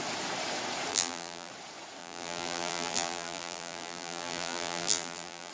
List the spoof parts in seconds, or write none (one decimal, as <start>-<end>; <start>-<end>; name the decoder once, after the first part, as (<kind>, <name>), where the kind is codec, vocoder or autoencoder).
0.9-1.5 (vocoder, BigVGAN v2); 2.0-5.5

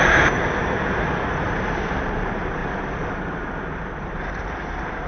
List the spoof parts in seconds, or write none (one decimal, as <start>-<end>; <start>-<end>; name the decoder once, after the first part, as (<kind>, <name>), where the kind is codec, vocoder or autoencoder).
0.0-2.6 (vocoder, BigVGAN v2); 3.1-5.1

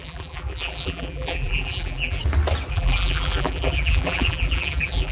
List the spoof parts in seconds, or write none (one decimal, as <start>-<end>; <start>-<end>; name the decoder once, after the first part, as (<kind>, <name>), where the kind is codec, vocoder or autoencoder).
0.0-2.2 (vocoder, BigVGAN v2); 2.7-5.1

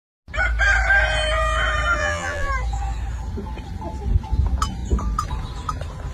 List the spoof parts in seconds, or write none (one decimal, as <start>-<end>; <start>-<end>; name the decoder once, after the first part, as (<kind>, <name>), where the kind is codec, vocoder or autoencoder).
2.0-2.5 (vocoder, BigVGAN v2)